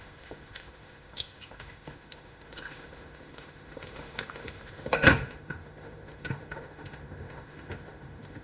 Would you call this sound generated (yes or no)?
yes